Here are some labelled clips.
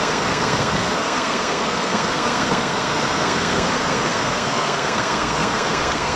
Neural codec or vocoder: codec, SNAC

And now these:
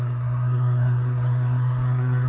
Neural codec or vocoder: codec, SNAC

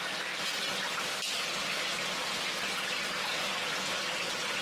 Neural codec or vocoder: none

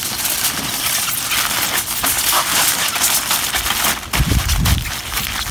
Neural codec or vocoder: none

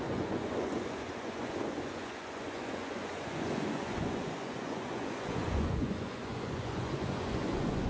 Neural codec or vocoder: vocoder, Vocos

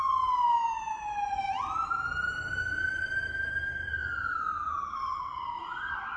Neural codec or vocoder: vocoder, BigVGAN v2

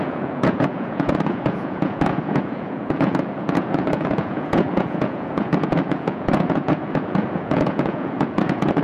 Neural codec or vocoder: vocoder, Vocos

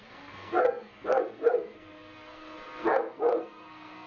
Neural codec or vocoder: codec, SNAC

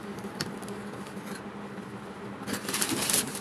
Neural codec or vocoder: vocoder, BigVGAN v2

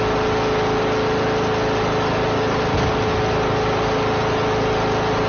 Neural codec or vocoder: none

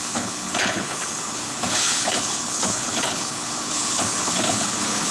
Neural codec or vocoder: codec, HILCodec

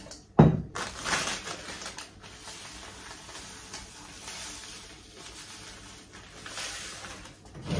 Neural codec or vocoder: none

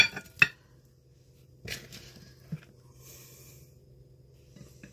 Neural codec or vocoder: none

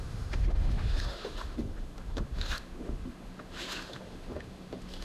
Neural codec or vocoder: autoencoder, DAC-VAE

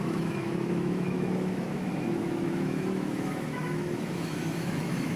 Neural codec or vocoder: autoencoder, DAC-VAE